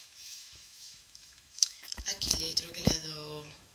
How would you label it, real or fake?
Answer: fake